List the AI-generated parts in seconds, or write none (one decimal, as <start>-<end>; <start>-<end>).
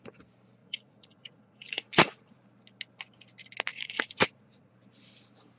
0.6-2.4; 3.7-4.7